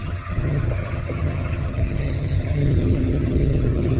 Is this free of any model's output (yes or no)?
no